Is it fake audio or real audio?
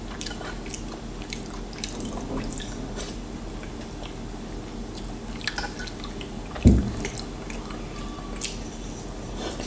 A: real